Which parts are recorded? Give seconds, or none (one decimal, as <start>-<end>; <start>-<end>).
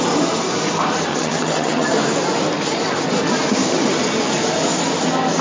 0.0-1.1; 1.9-5.4